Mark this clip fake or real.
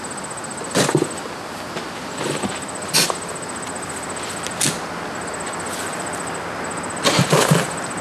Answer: real